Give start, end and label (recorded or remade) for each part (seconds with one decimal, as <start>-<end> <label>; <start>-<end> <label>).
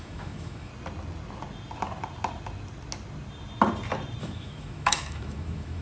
0.0-0.7 remade; 0.7-4.2 recorded; 4.2-5.8 remade